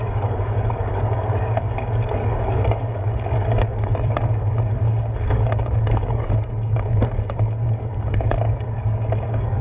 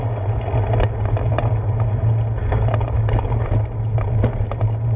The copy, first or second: first